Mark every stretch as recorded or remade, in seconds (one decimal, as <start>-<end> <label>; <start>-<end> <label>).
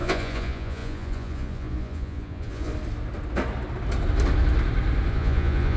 0.0-2.7 remade; 2.7-5.1 recorded; 5.1-5.8 remade